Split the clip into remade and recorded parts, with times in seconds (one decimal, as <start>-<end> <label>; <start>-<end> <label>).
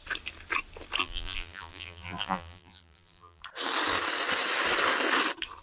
0.0-1.0 recorded; 1.0-3.4 remade; 3.4-5.6 recorded